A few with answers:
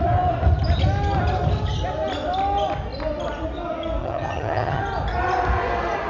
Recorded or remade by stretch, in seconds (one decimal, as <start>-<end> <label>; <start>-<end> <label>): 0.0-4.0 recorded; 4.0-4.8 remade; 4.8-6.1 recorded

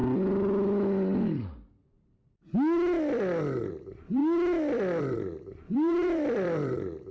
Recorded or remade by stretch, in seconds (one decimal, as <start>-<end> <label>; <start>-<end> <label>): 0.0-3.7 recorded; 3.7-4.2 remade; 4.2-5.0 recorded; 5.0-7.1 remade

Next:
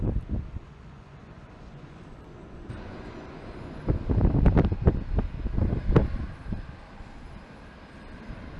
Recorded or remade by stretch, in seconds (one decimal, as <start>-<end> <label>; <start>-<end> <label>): 0.0-0.6 recorded; 0.6-3.8 remade; 3.8-8.6 recorded